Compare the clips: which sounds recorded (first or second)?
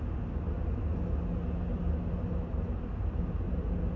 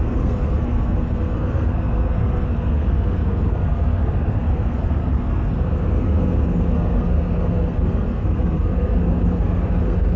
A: first